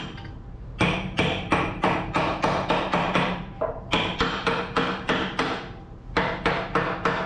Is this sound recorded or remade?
remade